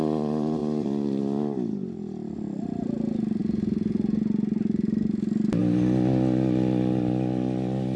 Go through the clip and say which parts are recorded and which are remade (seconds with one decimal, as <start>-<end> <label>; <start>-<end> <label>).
0.0-8.0 recorded

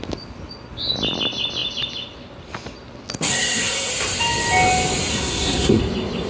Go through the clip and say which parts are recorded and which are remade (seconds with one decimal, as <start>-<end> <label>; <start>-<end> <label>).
0.0-3.3 recorded; 3.3-3.9 remade; 3.9-5.1 recorded; 5.1-5.8 remade; 5.8-6.3 recorded

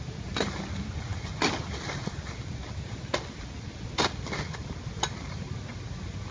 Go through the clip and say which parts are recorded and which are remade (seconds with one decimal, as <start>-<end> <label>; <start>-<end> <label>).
0.0-6.3 recorded

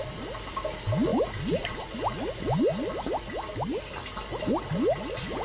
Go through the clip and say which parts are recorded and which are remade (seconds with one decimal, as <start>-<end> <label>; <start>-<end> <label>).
0.0-5.4 recorded

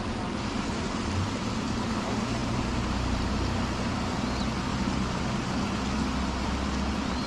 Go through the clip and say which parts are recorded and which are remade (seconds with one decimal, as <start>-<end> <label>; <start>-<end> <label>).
0.0-7.3 recorded